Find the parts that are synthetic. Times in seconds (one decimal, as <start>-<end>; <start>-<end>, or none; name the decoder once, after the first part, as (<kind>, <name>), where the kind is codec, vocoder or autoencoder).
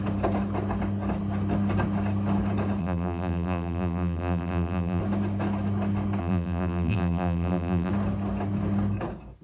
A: 2.8-5.0 (vocoder, BigVGAN v2); 6.2-7.9